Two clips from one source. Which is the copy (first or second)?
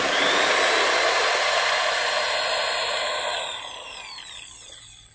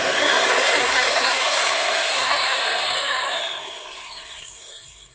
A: second